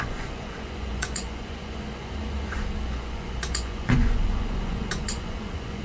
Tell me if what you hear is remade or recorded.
remade